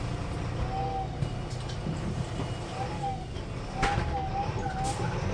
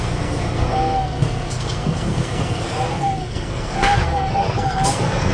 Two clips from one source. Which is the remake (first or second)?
second